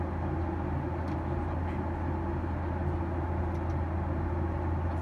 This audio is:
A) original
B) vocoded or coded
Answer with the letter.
A